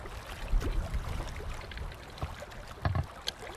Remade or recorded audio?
recorded